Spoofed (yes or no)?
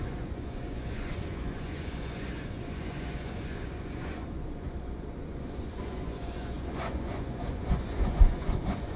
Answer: yes